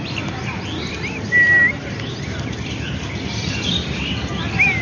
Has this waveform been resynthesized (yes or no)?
no